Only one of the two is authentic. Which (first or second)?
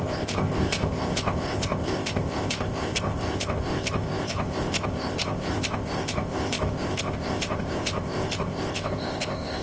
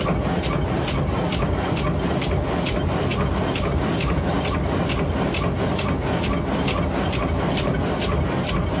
second